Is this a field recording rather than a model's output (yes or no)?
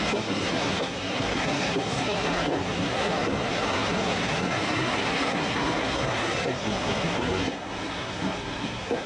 no